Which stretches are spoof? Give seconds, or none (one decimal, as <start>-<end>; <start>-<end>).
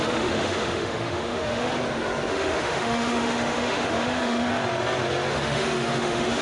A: 0.0-1.7; 2.3-4.5; 5.3-6.4